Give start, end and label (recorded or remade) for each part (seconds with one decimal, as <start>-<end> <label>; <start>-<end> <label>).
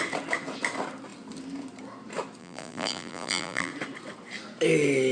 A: 0.0-2.4 recorded; 2.4-3.7 remade; 3.7-5.1 recorded